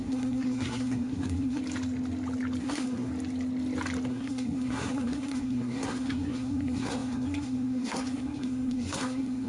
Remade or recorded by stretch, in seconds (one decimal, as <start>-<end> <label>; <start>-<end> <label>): 0.0-1.6 remade; 1.6-2.6 recorded; 2.6-3.1 remade; 3.1-4.1 recorded; 4.1-9.5 remade